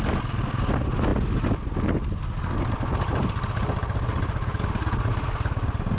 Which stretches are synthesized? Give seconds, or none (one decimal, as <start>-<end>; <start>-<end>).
none